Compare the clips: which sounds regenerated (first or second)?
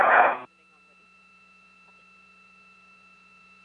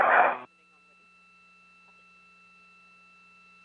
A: first